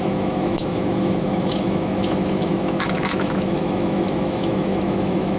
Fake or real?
fake